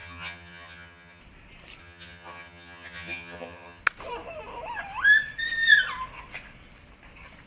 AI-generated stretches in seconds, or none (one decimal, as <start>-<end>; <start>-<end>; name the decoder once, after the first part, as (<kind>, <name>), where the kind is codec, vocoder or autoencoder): 0.0-1.2 (vocoder, HiFi-GAN); 1.8-3.8